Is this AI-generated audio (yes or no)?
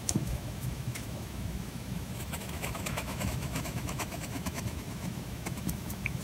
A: yes